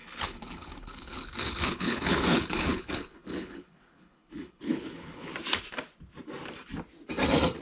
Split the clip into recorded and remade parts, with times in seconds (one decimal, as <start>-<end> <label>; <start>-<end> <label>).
0.0-5.3 remade; 5.3-7.6 recorded